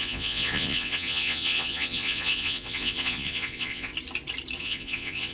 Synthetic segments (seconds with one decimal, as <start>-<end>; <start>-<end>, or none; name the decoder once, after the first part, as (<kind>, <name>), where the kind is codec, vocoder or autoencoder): 0.0-3.9 (vocoder, Vocos); 4.6-5.3